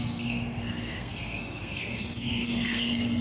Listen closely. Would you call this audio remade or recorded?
remade